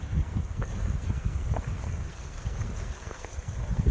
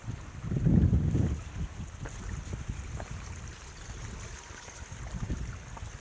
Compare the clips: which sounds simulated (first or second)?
first